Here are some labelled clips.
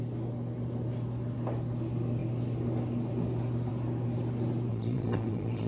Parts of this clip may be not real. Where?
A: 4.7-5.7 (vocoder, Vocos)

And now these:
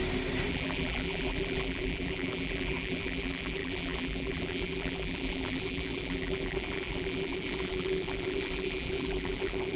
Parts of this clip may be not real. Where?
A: 0.5-9.8 (vocoder, BigVGAN v2)

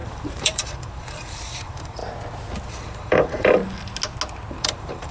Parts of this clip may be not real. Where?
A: 0.0-2.0 (vocoder, BigVGAN v2); 2.7-3.6; 4.5-5.1

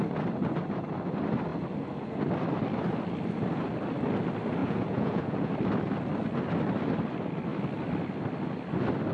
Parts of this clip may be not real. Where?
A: 4.6-5.5 (vocoder, Vocos)

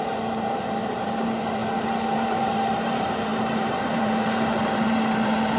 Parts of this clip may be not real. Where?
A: 0.0-5.6 (vocoder, BigVGAN v2)

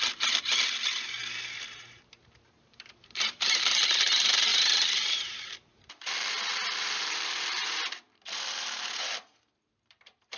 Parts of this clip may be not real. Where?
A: 0.0-1.2 (vocoder, BigVGAN v2); 1.9-10.4